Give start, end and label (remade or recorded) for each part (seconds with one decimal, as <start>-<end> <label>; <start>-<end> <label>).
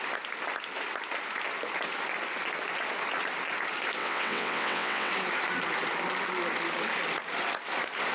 0.0-4.0 recorded; 4.0-5.1 remade; 5.1-8.1 recorded